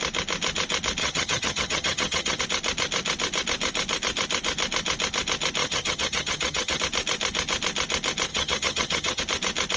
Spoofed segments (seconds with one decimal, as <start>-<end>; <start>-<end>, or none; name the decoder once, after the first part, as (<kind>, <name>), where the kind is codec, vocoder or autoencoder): 1.0-2.4 (vocoder, HiFi-GAN); 5.6-6.8; 8.3-9.2